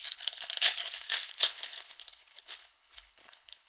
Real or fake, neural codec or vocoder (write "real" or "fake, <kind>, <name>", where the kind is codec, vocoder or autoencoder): fake, codec, HILCodec